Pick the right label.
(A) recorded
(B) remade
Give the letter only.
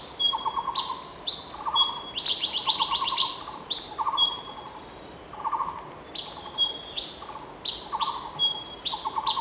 A